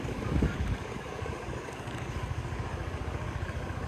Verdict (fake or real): fake